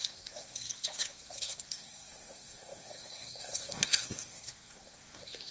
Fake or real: fake